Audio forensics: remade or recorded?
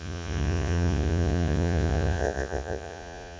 remade